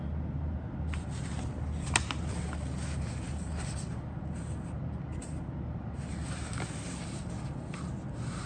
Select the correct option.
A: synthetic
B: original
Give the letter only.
B